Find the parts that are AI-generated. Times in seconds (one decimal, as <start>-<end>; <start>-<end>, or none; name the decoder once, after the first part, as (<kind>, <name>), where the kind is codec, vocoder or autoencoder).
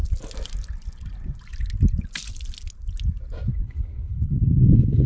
3.5-5.1 (codec, HILCodec)